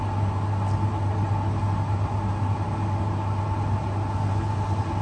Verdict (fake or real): real